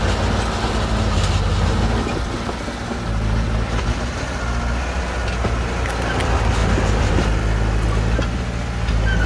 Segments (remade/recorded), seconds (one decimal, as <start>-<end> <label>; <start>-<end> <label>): 0.0-6.6 recorded; 6.6-7.4 remade; 7.4-9.3 recorded